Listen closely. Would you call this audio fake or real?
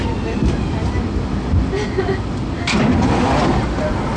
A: real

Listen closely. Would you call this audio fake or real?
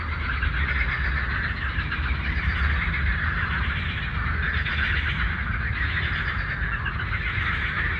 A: real